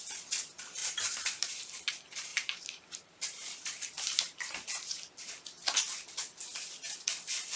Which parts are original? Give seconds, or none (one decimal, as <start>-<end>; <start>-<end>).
0.0-0.8; 1.9-2.3; 4.9-7.6